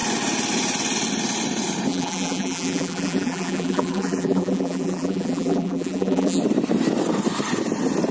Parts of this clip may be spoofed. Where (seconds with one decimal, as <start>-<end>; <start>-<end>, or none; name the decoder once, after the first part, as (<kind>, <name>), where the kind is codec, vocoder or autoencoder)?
1.9-6.4 (vocoder, BigVGAN v2)